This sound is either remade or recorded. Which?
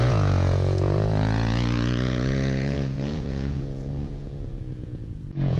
remade